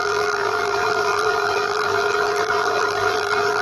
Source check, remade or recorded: remade